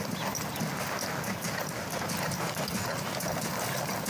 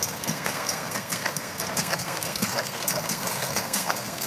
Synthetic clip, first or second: second